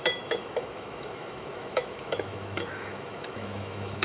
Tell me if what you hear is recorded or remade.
remade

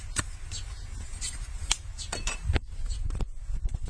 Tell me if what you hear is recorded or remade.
remade